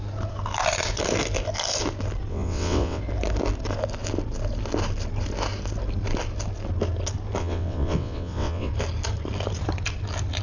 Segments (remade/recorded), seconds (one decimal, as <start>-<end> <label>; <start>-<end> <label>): 0.0-2.3 recorded; 2.3-3.0 remade; 3.0-7.4 recorded; 7.4-8.7 remade; 8.7-10.4 recorded